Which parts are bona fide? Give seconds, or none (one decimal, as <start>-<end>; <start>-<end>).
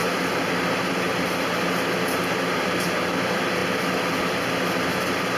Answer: 0.0-5.4